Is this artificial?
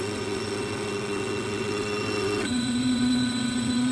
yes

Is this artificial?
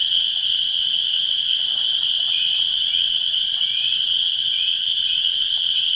yes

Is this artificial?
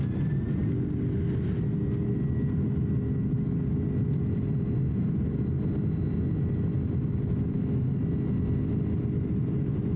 no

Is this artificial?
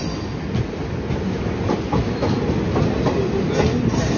no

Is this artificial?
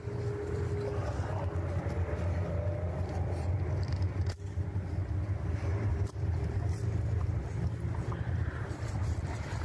no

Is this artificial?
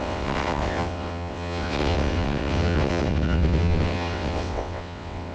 yes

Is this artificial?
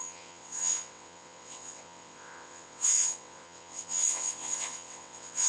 yes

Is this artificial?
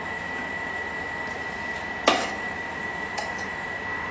no